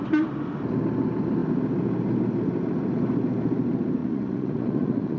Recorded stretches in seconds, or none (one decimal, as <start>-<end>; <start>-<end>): 0.0-4.0